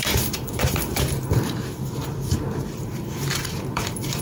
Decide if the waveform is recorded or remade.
remade